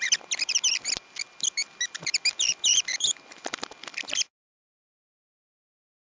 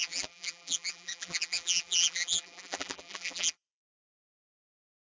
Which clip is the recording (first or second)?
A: first